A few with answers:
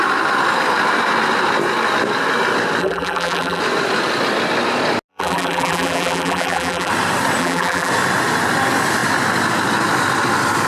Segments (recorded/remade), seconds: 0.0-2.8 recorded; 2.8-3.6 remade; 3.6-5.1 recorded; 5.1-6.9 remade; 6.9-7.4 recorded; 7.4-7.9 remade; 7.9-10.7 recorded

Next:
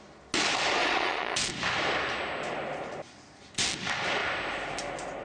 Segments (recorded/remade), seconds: 0.0-0.8 recorded; 0.8-1.4 remade; 1.4-5.2 recorded

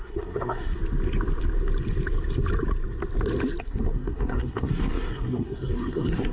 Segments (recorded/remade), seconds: 0.0-0.8 remade; 0.8-3.6 recorded; 3.6-6.3 remade

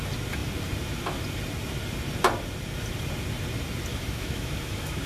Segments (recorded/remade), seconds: 0.0-3.9 recorded; 3.9-5.1 remade